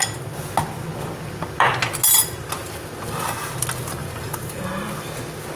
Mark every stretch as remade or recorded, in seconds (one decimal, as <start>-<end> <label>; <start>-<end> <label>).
0.0-4.0 recorded; 4.0-4.6 remade; 4.6-5.6 recorded